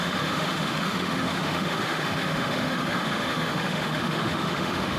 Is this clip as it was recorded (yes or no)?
no